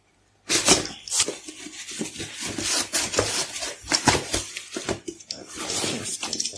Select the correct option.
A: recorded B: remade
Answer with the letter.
A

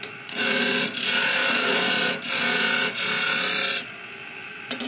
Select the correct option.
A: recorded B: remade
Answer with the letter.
B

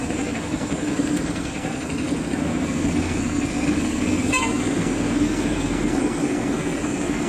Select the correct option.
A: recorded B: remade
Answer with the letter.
B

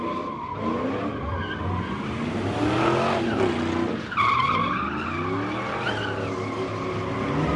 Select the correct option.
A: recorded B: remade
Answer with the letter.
A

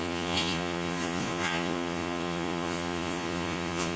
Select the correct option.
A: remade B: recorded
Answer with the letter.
A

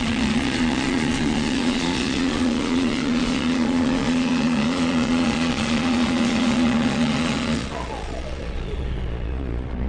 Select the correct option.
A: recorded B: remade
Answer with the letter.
B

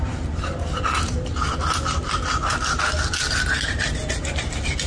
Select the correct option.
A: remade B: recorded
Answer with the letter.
B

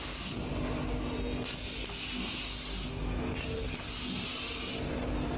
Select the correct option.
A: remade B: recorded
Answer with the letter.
B